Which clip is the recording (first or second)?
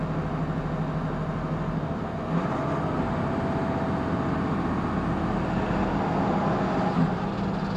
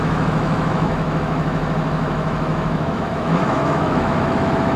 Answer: first